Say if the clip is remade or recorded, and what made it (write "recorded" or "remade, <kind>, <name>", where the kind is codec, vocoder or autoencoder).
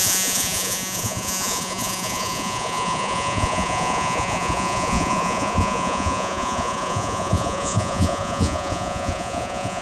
remade, vocoder, Vocos